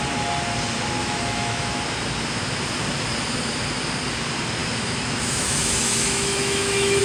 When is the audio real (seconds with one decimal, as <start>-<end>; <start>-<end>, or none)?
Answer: 0.0-1.0; 1.8-4.6